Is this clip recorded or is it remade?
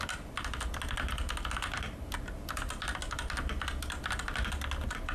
recorded